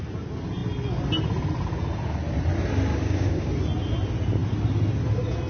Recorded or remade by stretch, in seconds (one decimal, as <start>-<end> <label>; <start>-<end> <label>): 0.0-2.9 recorded; 2.9-3.5 remade; 3.5-5.5 recorded